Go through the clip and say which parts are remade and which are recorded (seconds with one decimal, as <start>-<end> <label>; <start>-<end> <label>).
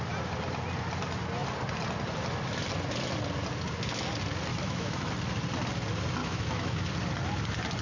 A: 0.0-4.5 recorded; 4.5-5.1 remade; 5.1-6.2 recorded; 6.2-6.9 remade; 6.9-7.8 recorded